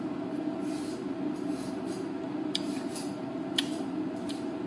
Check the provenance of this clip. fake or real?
fake